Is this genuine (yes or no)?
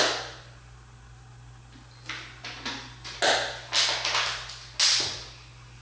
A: yes